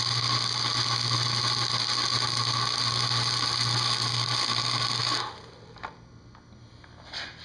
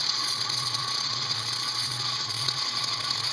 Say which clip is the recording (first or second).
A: first